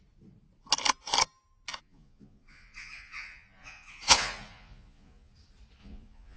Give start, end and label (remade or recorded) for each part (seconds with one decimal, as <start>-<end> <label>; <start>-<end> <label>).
0.0-1.7 recorded; 1.7-5.3 remade; 5.3-5.8 recorded; 5.8-6.4 remade